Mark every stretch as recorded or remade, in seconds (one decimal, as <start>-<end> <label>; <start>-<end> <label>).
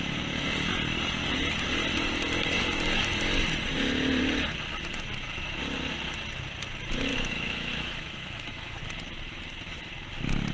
0.0-7.1 recorded; 7.1-8.8 remade; 8.8-10.5 recorded